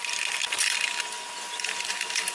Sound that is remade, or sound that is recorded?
recorded